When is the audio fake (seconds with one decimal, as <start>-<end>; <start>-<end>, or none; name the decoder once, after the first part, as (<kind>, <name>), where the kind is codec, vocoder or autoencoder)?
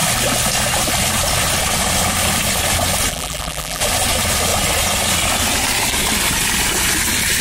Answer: 3.1-3.8 (vocoder, BigVGAN v2)